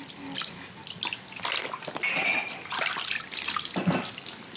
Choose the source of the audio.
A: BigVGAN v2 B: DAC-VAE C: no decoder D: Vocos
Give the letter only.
C